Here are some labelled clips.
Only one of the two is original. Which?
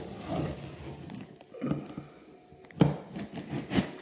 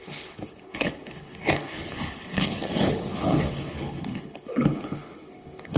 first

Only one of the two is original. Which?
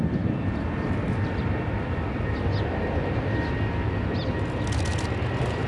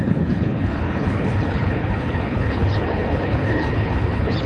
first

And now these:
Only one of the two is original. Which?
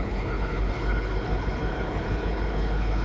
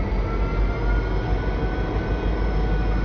second